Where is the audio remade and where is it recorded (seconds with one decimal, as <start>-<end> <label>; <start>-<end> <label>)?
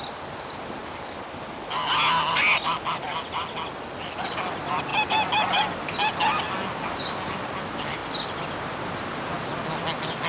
0.0-10.3 recorded